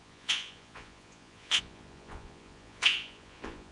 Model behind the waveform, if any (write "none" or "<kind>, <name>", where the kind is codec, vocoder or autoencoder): vocoder, Vocos